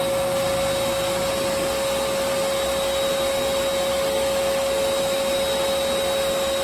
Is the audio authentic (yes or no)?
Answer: yes